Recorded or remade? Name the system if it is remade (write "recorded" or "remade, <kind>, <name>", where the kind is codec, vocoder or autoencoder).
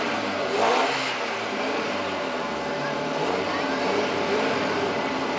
remade, vocoder, BigVGAN v2